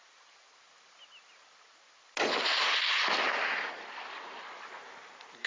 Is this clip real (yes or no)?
yes